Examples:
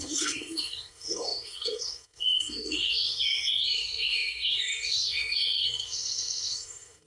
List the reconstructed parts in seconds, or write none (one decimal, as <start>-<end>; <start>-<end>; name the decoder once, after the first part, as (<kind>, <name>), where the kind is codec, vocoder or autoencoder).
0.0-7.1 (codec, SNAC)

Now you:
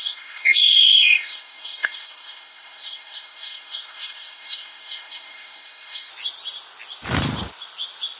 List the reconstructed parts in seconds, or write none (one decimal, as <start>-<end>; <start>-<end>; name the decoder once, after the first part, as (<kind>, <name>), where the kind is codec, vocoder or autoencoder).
0.0-6.1 (codec, SNAC)

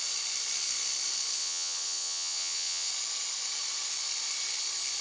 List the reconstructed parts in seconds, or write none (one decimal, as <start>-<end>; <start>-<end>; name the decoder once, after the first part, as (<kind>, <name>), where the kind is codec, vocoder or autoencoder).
1.4-2.9 (vocoder, WaveNeXt)

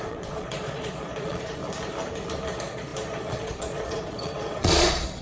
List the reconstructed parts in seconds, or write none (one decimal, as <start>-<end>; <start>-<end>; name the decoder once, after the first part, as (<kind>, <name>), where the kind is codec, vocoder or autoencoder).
0.0-1.6 (vocoder, Vocos); 2.5-5.2